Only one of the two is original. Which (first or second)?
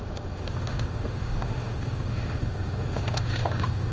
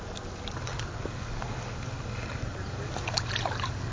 second